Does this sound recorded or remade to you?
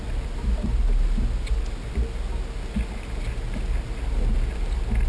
recorded